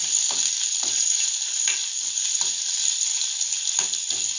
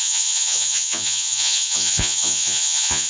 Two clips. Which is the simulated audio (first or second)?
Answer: second